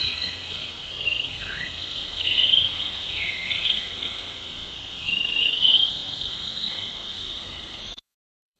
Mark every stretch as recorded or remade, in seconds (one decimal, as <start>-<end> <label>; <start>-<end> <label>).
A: 0.0-8.6 remade